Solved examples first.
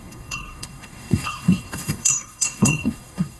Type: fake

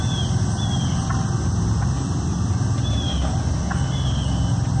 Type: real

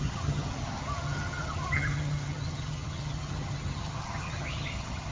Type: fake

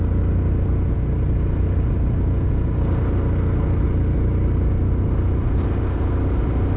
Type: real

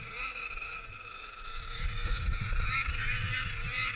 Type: fake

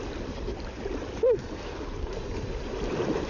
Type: real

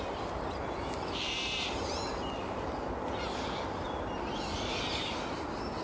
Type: real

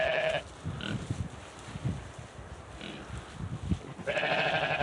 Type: real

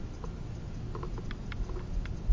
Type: real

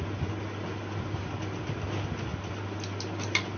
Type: real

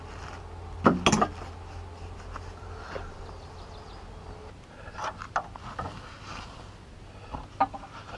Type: real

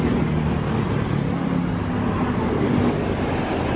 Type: real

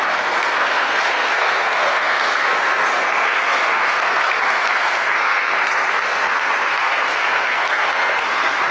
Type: fake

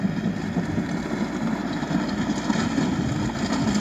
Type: real